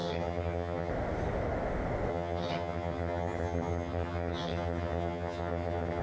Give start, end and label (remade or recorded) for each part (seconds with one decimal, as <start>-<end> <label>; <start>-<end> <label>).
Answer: 0.0-0.9 remade; 0.9-2.1 recorded; 2.1-6.0 remade